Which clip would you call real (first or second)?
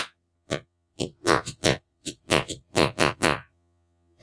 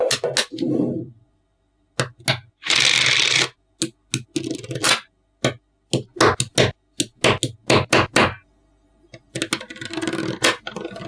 second